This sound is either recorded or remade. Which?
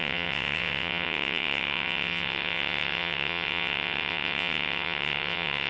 remade